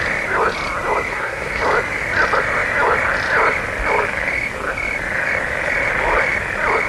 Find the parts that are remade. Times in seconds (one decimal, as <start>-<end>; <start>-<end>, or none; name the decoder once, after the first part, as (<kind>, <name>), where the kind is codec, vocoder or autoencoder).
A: 1.1-1.6 (codec, SNAC)

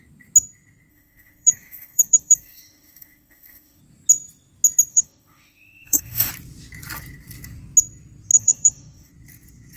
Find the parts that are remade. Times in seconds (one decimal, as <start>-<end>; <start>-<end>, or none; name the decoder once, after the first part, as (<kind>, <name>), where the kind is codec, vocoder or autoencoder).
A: 0.9-3.8 (autoencoder, DAC-VAE); 4.9-6.3; 8.3-9.1

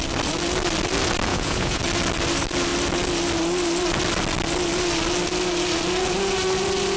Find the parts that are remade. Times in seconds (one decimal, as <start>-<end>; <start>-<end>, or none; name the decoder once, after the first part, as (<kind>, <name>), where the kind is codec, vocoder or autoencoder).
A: 1.3-1.8 (vocoder, Vocos)

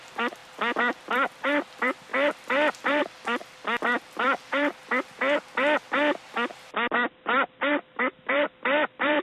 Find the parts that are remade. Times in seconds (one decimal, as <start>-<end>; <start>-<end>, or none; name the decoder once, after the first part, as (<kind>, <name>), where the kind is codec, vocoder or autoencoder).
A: 0.0-0.4 (vocoder, BigVGAN v2); 1.0-4.8; 7.7-9.2

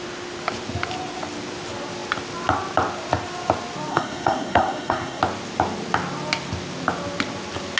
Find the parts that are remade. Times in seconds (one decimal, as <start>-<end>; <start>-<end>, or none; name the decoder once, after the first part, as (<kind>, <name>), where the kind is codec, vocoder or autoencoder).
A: 3.9-5.2 (codec, SNAC)

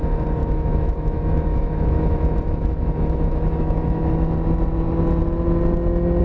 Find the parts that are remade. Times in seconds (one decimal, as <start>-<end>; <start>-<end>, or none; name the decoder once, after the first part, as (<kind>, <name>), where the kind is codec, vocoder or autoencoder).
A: 0.4-4.1 (autoencoder, DAC-VAE)

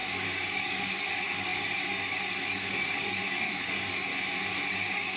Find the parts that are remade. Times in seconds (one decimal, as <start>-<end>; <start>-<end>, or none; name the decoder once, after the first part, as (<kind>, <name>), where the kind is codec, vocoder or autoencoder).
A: 0.0-4.1 (codec, DAC); 4.7-5.2